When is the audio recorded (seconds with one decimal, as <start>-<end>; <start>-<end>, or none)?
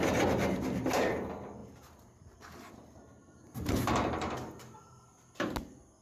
0.0-1.6; 4.6-6.0